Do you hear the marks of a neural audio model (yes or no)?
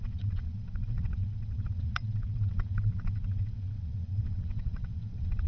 yes